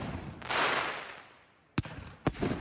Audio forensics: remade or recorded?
recorded